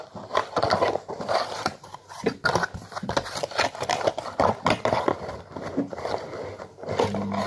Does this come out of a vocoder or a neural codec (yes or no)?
no